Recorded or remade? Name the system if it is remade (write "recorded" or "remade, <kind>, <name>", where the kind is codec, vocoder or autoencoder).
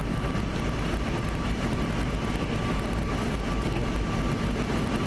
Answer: recorded